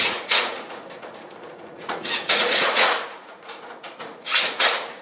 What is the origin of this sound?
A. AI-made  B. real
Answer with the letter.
A